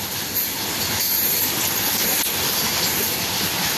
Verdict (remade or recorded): remade